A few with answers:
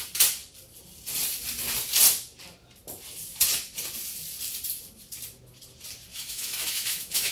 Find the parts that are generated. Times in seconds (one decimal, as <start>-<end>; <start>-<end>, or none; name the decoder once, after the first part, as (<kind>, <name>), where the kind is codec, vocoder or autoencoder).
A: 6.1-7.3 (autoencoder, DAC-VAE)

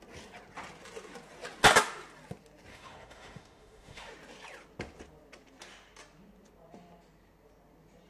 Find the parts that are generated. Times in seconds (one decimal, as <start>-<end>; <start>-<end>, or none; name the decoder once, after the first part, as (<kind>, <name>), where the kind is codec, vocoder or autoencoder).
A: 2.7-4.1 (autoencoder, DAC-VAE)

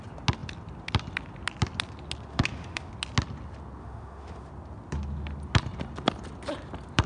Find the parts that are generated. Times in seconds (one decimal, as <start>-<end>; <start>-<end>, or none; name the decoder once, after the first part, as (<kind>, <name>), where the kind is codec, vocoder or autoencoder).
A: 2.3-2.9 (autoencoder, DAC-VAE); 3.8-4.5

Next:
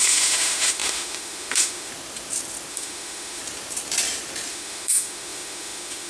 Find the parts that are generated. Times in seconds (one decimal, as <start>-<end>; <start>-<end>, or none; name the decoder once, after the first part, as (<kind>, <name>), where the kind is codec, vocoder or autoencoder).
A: 0.0-1.9 (autoencoder, DAC-VAE); 2.7-3.4; 4.5-6.1